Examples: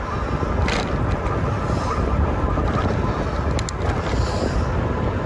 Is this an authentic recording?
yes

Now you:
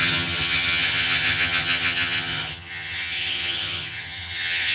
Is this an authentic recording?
no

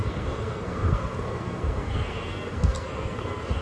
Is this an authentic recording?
no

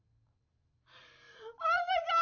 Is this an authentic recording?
yes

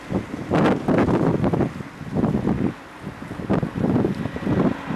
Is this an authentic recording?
yes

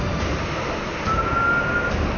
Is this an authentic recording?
yes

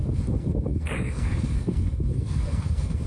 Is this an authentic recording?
no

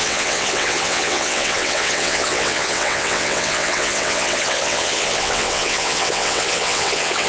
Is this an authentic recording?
no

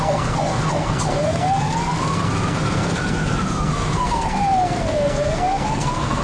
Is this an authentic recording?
no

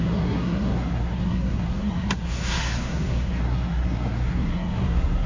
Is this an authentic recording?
no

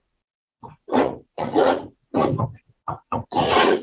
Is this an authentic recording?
no